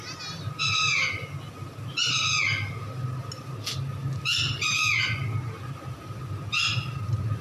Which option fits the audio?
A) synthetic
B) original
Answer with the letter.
B